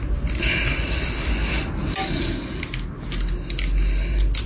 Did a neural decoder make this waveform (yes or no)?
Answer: no